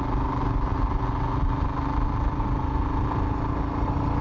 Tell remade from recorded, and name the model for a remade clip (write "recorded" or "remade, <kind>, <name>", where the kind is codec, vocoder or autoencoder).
recorded